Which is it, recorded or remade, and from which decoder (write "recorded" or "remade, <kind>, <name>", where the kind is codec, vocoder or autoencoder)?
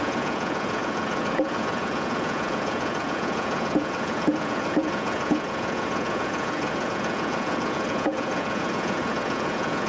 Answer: remade, vocoder, Vocos